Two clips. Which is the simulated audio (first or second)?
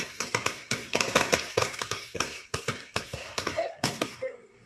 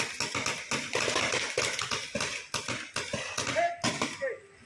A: first